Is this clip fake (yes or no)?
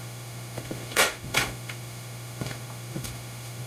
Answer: yes